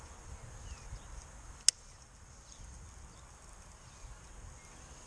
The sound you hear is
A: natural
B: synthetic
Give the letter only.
A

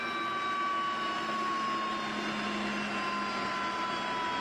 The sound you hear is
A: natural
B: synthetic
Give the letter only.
A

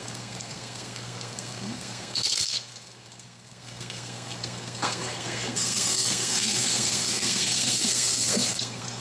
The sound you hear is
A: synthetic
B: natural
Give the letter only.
A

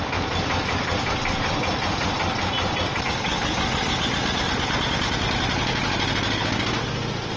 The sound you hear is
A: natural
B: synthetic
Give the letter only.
A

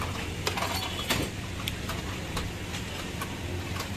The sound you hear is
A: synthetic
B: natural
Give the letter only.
B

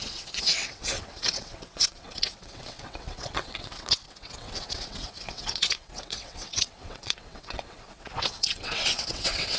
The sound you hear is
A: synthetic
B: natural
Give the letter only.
A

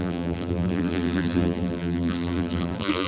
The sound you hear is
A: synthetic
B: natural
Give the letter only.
A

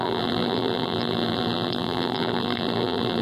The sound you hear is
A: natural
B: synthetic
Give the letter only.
B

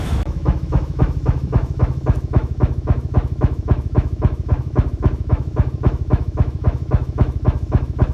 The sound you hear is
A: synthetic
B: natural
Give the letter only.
A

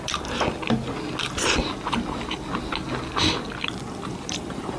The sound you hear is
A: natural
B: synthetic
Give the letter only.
A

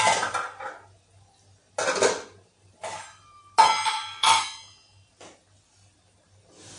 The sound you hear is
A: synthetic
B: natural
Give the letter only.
B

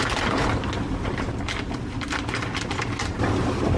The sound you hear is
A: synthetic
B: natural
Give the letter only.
B